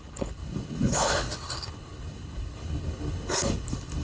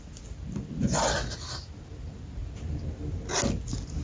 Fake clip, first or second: first